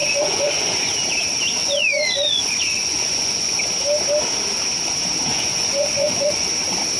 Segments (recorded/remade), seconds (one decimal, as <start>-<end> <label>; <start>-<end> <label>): 0.0-0.9 remade; 0.9-1.6 recorded; 1.6-3.6 remade; 3.6-5.3 recorded; 5.3-6.5 remade; 6.5-7.0 recorded